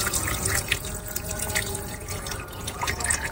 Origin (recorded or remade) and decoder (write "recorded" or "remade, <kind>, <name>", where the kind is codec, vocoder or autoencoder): remade, vocoder, Vocos